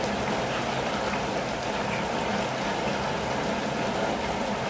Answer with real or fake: real